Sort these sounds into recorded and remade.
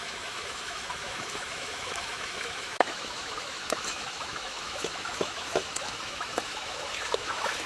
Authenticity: remade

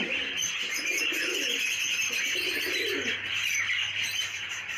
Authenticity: recorded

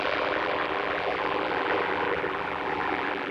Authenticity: remade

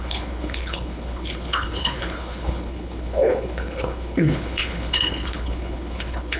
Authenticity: remade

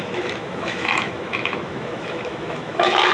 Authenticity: remade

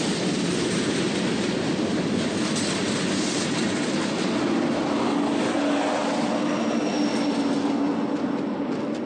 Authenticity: recorded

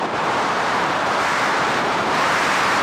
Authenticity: remade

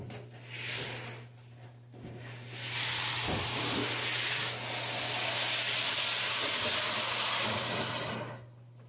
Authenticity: recorded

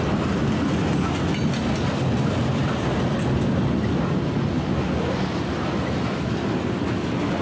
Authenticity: recorded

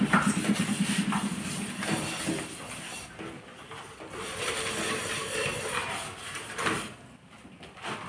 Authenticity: recorded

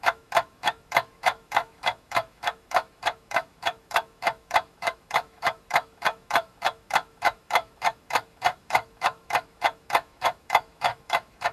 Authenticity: remade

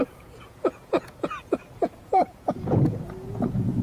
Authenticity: remade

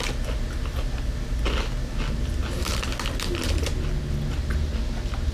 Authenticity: recorded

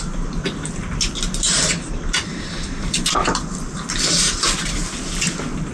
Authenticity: recorded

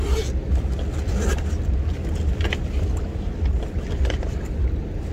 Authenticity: recorded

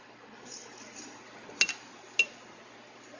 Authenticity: recorded